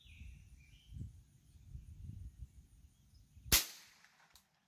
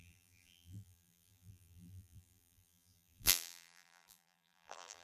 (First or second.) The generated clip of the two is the second